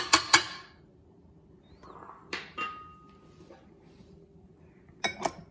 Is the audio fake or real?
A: real